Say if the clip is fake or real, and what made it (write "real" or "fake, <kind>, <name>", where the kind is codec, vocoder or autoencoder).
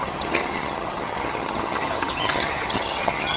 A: fake, vocoder, HiFi-GAN